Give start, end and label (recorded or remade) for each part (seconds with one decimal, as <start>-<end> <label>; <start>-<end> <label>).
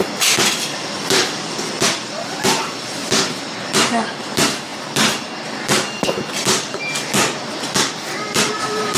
0.0-9.0 remade